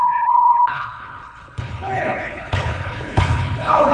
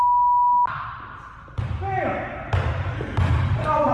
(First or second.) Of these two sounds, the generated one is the first